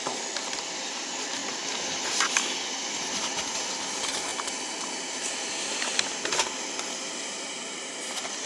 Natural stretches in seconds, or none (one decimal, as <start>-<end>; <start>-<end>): 1.4-3.2